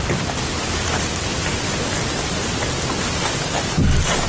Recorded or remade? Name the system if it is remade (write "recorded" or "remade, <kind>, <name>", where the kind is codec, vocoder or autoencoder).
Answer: recorded